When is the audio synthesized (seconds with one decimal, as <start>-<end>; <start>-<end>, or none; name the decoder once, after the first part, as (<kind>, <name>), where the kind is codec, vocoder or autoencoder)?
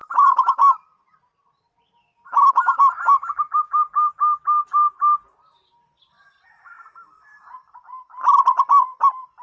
0.0-0.6 (autoencoder, DAC-VAE); 2.0-2.8